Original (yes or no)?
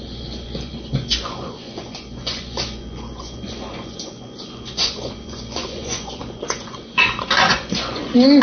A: no